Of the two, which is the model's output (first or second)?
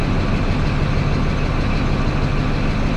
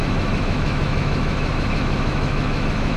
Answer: second